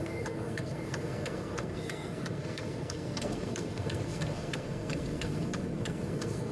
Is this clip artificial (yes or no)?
yes